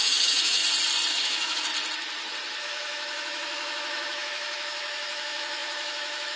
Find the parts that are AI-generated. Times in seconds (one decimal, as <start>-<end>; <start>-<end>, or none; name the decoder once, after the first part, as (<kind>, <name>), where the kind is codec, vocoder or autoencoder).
0.0-0.6 (autoencoder, DAC-VAE); 1.1-1.7; 2.6-6.4